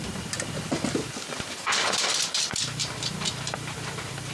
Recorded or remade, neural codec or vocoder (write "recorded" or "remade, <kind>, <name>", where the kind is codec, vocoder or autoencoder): remade, vocoder, BigVGAN v2